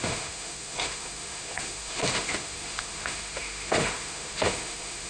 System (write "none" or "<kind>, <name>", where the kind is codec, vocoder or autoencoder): autoencoder, DAC-VAE